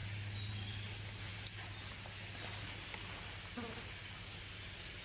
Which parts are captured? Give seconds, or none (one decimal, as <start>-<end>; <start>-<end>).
0.0-5.0